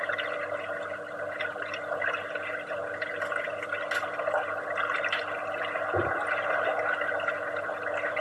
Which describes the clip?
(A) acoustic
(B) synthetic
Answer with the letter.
A